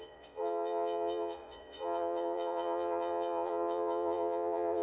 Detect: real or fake fake